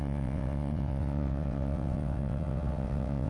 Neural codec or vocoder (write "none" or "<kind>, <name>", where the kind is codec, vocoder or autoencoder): vocoder, WaveNeXt